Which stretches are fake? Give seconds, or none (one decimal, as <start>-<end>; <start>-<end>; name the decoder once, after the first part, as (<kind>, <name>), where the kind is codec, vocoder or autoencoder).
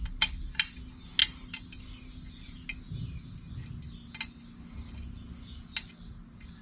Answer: none